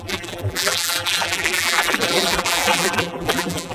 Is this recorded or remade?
remade